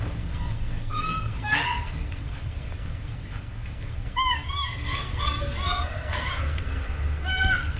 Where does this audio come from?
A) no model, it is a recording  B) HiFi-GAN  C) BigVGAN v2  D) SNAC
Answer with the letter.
D